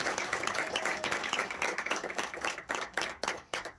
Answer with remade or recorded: remade